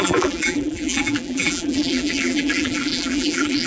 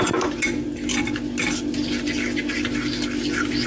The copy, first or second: first